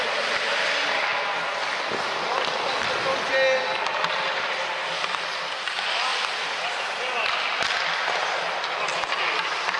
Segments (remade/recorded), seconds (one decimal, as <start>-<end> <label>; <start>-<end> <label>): 0.0-1.1 remade; 1.1-3.9 recorded; 3.9-6.1 remade; 6.1-6.8 recorded; 6.8-9.8 remade